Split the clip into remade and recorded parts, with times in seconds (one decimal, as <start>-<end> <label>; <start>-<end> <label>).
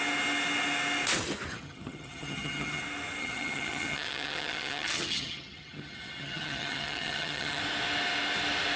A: 0.0-1.5 recorded; 1.5-2.8 remade; 2.8-3.2 recorded; 3.2-7.6 remade; 7.6-8.8 recorded